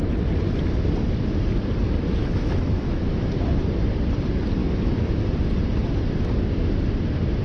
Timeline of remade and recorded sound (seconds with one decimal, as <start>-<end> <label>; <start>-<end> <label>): 0.0-2.2 recorded; 2.2-3.2 remade; 3.2-4.6 recorded; 4.6-5.2 remade; 5.2-7.4 recorded